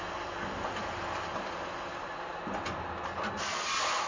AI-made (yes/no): no